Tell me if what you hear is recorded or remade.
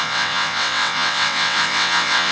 remade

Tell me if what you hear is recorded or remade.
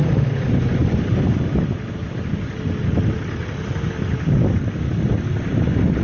recorded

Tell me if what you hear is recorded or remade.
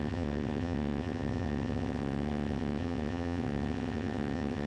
remade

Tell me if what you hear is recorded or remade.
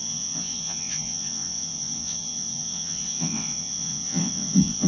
remade